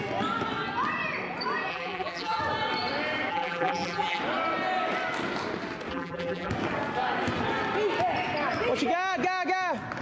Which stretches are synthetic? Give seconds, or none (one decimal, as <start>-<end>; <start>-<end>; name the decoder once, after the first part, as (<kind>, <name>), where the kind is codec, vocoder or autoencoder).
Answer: 1.7-2.4 (vocoder, BigVGAN v2); 3.3-4.2; 5.9-6.5